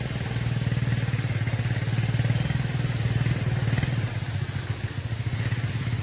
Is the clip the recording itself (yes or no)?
yes